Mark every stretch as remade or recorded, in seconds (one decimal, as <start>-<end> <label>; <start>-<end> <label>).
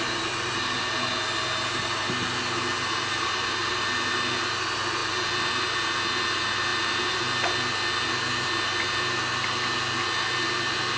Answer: 0.0-6.7 recorded; 6.7-7.2 remade; 7.2-11.0 recorded